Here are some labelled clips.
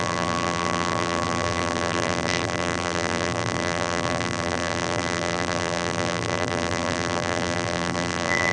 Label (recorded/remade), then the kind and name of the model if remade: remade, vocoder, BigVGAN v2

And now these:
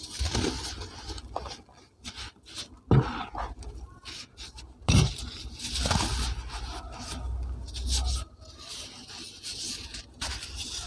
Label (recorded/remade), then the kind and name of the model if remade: recorded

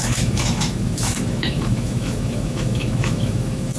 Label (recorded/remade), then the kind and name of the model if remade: remade, autoencoder, DAC-VAE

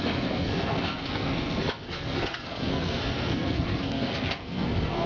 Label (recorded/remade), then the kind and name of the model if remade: remade, codec, SNAC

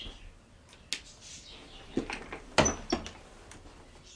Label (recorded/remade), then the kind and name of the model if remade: recorded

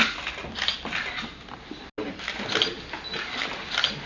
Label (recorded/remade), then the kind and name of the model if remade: recorded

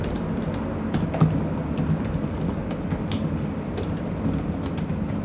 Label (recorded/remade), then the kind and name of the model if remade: recorded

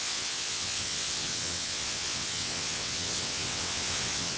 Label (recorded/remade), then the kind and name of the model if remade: remade, vocoder, WaveNeXt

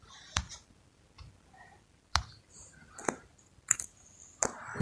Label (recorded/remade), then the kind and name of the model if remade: recorded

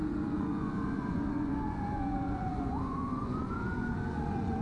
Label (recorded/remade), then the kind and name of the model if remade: remade, vocoder, Vocos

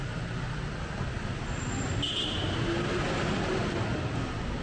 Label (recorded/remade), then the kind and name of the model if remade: recorded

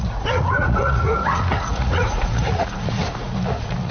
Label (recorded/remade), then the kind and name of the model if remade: remade, vocoder, Vocos